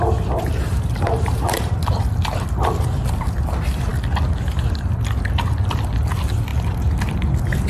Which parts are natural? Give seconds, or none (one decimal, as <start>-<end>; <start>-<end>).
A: 0.0-0.7; 1.7-7.7